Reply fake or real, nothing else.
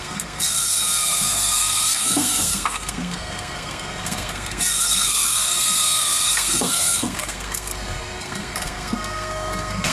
fake